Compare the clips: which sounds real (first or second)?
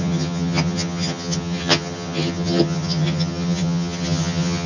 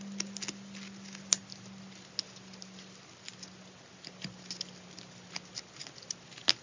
second